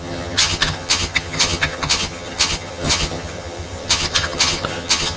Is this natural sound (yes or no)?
no